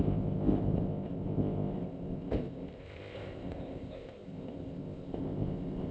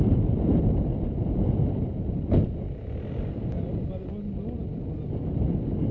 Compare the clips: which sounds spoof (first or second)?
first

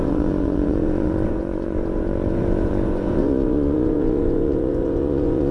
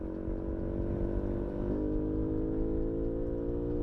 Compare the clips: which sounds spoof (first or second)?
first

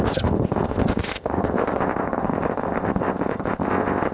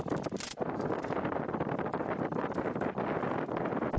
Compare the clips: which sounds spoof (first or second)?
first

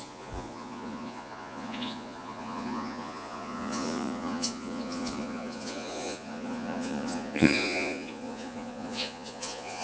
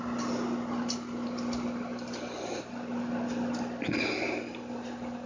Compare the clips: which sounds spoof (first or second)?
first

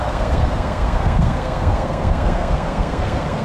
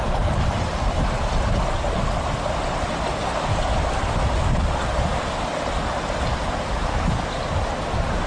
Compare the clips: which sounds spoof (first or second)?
first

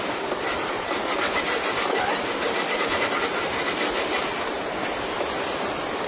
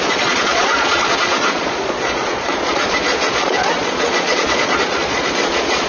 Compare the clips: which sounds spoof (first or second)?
second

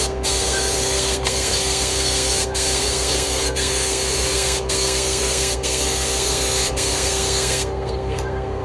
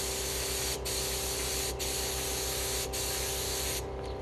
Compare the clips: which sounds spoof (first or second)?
first